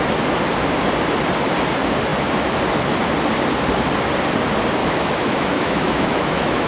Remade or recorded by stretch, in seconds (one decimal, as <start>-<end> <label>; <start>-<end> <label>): 0.0-4.8 recorded; 4.8-6.7 remade

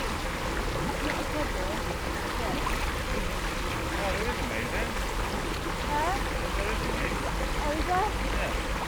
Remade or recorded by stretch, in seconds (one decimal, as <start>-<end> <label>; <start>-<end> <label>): 0.0-8.9 recorded